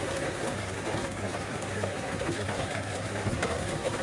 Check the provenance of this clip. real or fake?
fake